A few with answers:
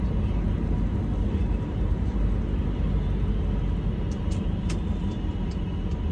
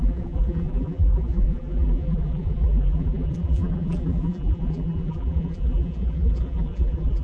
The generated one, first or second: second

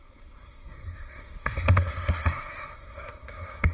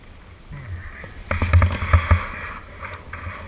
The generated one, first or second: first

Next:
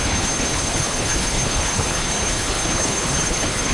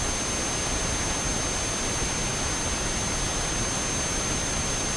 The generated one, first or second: first